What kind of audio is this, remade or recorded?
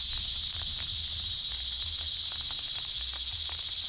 recorded